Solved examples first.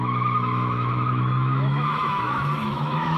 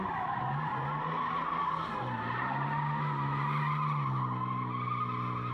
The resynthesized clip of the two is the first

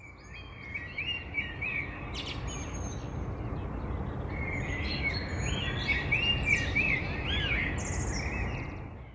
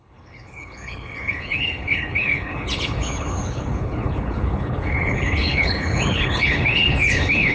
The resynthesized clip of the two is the second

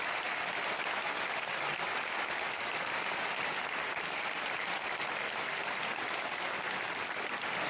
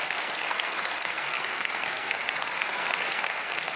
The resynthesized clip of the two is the second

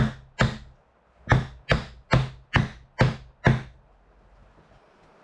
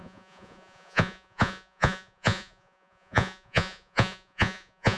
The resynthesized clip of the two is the second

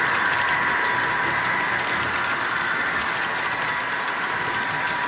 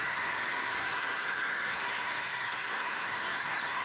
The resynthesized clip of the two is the second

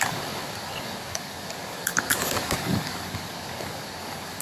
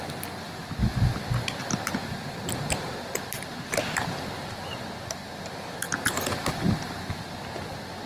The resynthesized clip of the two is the first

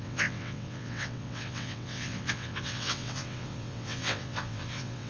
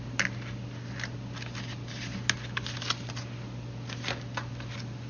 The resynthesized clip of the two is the first